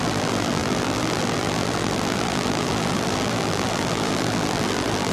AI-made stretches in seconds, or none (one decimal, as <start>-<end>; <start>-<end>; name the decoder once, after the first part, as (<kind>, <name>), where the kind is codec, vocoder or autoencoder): 0.0-5.1 (vocoder, BigVGAN v2)